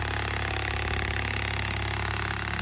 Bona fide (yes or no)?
yes